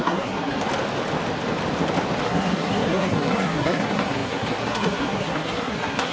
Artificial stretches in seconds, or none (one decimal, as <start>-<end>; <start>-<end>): 0.0-0.7; 2.2-6.1